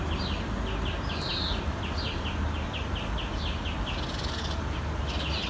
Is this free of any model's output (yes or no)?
yes